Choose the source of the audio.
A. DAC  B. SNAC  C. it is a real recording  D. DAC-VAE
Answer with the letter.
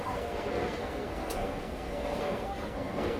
B